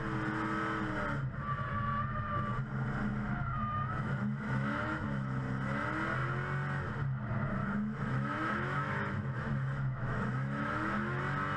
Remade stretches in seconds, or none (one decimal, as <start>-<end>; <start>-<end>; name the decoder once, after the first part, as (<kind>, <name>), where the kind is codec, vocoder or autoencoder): 3.1-5.4 (autoencoder, DAC-VAE); 7.6-11.2